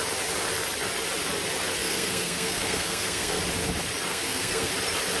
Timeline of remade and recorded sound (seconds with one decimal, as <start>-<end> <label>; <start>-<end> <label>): 0.0-1.8 recorded; 1.8-3.4 remade; 3.4-4.1 recorded; 4.1-4.7 remade; 4.7-5.2 recorded

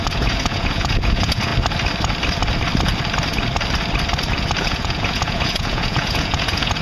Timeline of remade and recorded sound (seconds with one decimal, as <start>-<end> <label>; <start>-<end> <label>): 0.0-1.5 remade; 1.5-4.6 recorded; 4.6-6.8 remade

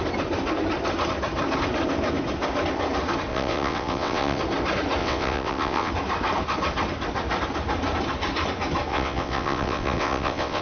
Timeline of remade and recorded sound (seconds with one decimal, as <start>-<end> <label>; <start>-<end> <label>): 0.0-3.3 recorded; 3.3-4.4 remade; 4.4-5.0 recorded; 5.0-5.9 remade; 5.9-8.9 recorded; 8.9-10.6 remade

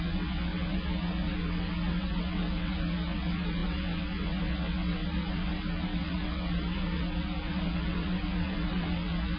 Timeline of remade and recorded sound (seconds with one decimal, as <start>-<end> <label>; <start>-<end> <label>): 0.0-9.4 remade

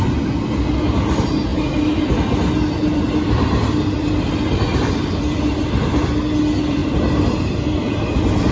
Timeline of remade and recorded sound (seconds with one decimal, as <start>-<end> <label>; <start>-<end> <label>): 0.0-8.5 recorded

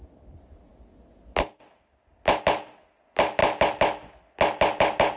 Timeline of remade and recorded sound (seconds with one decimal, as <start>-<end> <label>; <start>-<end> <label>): 0.0-5.2 recorded